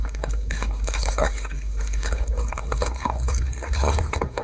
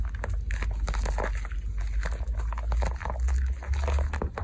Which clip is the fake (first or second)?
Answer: first